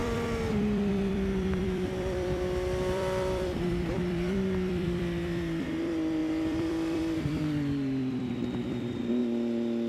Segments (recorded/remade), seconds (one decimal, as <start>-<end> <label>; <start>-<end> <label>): 0.0-9.2 remade; 9.2-9.9 recorded